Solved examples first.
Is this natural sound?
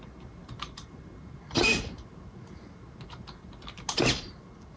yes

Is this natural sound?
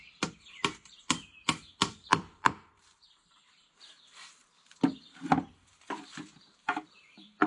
no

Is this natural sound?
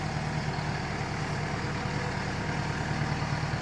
yes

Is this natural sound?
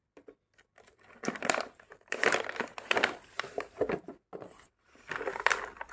no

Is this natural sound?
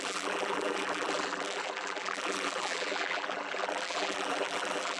no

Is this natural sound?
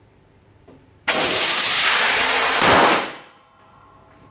no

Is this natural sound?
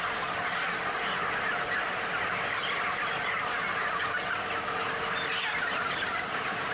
yes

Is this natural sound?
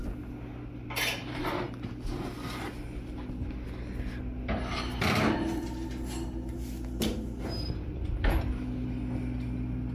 yes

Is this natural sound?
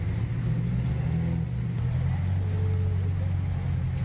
yes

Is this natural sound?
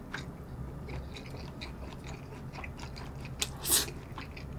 yes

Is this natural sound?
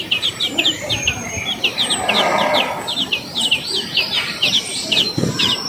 no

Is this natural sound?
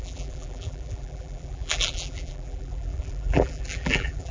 no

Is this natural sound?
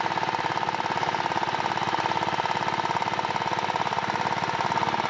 yes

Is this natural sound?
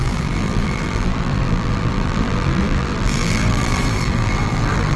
no